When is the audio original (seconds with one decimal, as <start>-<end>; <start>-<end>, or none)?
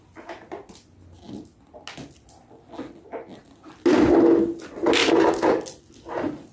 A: 0.0-6.5